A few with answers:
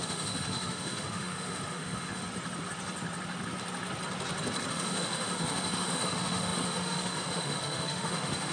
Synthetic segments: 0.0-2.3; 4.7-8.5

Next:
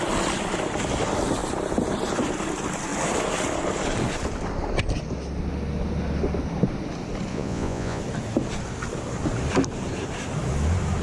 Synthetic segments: 7.3-8.0

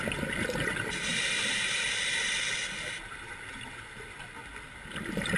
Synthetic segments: none